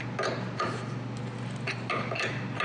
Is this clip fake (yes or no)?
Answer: no